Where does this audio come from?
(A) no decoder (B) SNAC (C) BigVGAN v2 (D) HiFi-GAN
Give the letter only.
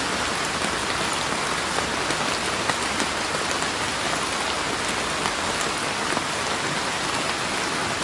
A